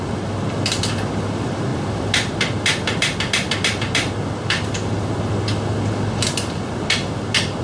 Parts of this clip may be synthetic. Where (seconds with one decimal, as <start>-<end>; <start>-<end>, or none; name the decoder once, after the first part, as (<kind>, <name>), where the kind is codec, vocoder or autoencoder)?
none